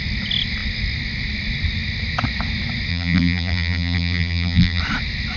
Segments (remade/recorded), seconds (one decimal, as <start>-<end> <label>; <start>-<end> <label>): 0.0-2.9 recorded; 2.9-4.8 remade; 4.8-5.4 recorded